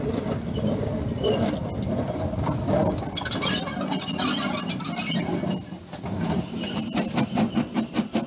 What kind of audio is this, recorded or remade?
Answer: recorded